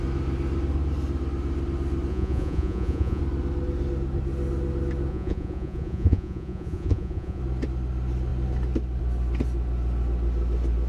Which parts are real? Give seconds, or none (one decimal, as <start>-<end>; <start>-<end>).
0.0-2.1; 3.2-5.1; 7.4-10.9